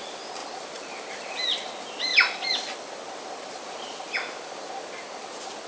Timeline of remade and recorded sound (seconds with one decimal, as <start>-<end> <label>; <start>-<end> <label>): 0.0-2.1 recorded; 2.1-3.5 remade; 3.5-5.7 recorded

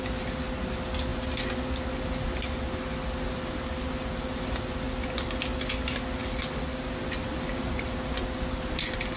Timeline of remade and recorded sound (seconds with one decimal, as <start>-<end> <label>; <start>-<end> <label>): 0.0-9.2 recorded

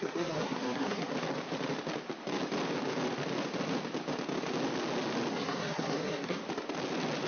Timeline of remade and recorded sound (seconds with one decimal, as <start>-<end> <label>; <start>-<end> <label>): 0.0-1.1 remade; 1.1-5.3 recorded; 5.3-6.4 remade; 6.4-7.3 recorded

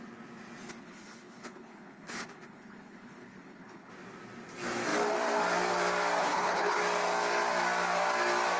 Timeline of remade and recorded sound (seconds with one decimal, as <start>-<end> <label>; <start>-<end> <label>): 0.0-0.7 recorded; 0.7-3.9 remade; 3.9-6.2 recorded; 6.2-6.8 remade; 6.8-8.6 recorded

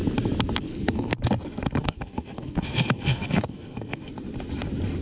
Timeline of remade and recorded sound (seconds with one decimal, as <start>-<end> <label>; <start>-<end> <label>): 0.0-0.6 recorded; 0.6-1.1 remade; 1.1-1.8 recorded; 1.8-4.1 remade; 4.1-5.0 recorded

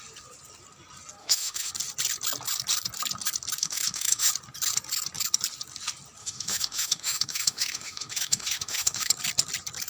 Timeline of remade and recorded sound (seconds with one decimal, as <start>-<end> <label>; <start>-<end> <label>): 0.0-1.2 recorded; 1.2-1.7 remade; 1.7-3.6 recorded; 3.6-4.3 remade; 4.3-6.2 recorded; 6.2-9.1 remade; 9.1-9.9 recorded

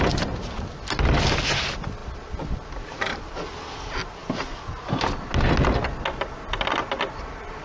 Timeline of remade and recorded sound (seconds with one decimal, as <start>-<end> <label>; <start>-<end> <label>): 0.0-7.6 recorded

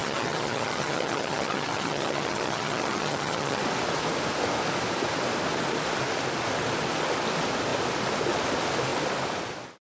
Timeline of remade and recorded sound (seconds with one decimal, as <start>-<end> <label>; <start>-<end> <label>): 0.0-3.6 remade; 3.6-9.9 recorded